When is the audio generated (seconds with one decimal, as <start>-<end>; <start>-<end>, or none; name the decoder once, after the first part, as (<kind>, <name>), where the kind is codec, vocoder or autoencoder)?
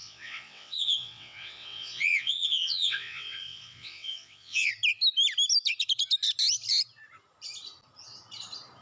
0.0-4.7 (vocoder, WaveNeXt)